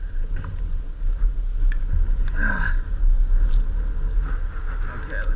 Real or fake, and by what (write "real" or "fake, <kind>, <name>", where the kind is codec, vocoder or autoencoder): real